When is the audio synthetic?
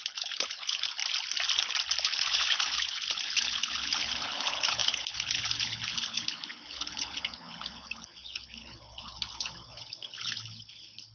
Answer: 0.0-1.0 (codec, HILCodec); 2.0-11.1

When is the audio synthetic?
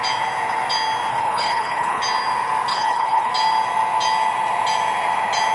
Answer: 1.1-2.0 (codec, HILCodec); 2.7-3.3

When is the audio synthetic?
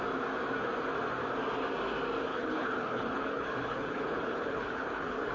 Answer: 2.3-5.3 (codec, HILCodec)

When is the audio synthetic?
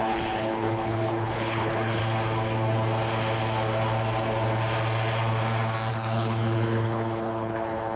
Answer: 0.0-2.0 (codec, HILCodec); 5.9-8.0